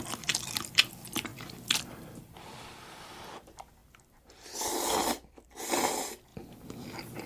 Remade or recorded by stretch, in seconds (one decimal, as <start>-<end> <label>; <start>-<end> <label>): 0.0-6.3 remade; 6.3-7.3 recorded